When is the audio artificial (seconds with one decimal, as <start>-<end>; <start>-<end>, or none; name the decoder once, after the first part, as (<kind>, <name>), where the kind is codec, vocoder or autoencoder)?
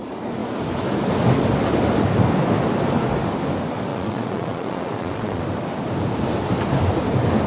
3.9-5.4 (vocoder, Vocos)